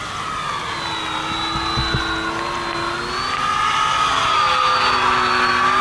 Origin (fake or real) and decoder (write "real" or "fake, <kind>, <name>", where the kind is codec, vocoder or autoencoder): real